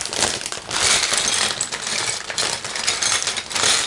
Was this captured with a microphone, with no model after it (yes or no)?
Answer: yes